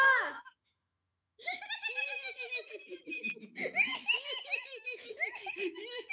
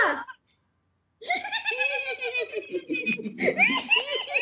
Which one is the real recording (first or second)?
second